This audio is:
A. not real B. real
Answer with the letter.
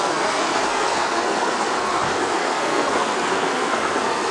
A